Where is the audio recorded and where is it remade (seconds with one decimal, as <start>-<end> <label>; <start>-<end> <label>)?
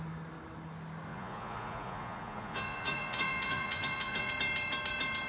0.0-1.1 recorded; 1.1-4.3 remade; 4.3-5.3 recorded